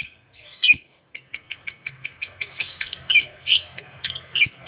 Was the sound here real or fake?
fake